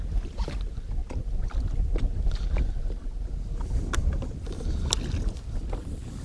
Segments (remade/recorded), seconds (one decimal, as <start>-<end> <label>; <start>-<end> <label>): 0.0-6.2 recorded